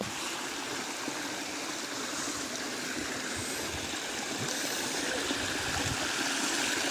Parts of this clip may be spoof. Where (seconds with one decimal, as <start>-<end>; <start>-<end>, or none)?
none